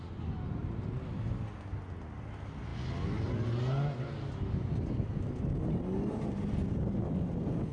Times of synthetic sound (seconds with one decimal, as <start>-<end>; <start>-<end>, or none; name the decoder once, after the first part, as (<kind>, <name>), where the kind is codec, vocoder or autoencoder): none